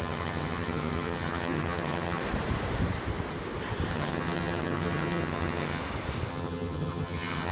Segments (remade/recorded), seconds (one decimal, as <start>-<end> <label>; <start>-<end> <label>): 0.0-2.2 remade; 2.2-3.9 recorded; 3.9-5.8 remade; 5.8-6.3 recorded; 6.3-7.5 remade